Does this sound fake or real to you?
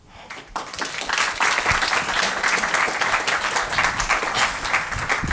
real